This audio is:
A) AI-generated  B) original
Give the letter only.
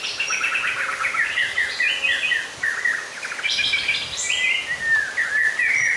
B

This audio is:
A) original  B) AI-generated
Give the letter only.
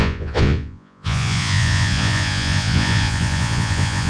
B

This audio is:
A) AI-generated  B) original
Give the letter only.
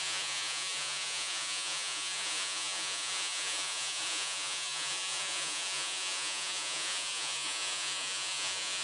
A